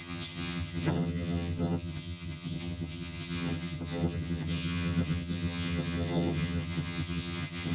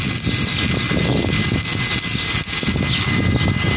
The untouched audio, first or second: second